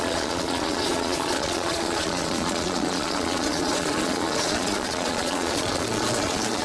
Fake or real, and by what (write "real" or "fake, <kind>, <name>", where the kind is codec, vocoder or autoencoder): fake, vocoder, Vocos